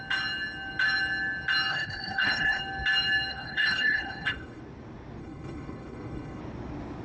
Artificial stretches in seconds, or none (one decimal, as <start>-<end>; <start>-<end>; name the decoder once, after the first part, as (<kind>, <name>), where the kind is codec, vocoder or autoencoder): 1.7-2.6 (codec, HILCodec); 3.3-4.6; 5.2-6.4